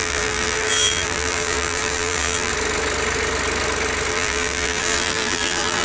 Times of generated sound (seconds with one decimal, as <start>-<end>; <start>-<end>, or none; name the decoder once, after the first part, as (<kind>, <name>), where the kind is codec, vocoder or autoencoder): 0.0-2.5 (vocoder, BigVGAN v2); 4.1-5.8